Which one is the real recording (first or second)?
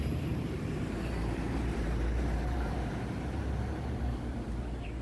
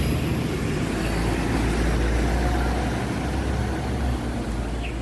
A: second